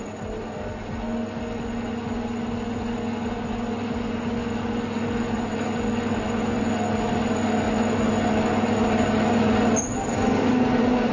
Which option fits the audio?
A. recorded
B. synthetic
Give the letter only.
A